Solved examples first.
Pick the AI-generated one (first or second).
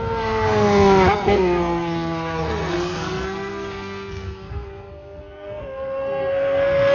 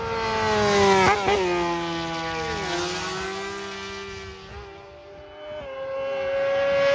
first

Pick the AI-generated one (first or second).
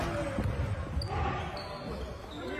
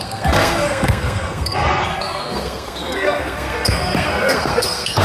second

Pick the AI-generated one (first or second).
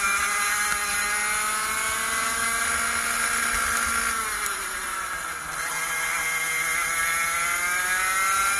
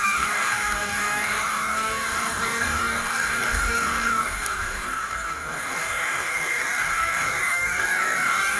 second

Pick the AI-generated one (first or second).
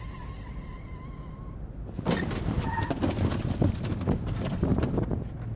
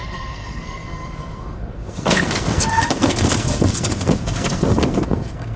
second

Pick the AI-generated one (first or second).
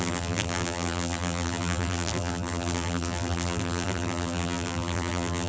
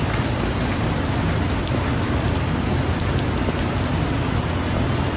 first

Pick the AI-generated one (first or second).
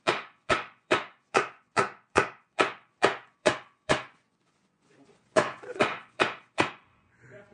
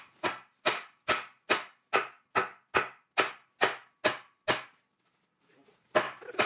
first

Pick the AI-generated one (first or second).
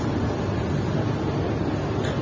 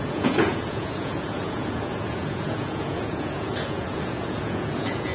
second